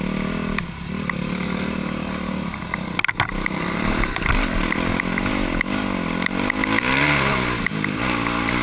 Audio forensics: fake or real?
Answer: real